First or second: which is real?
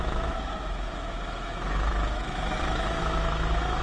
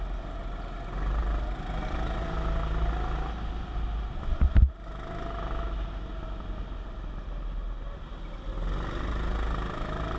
second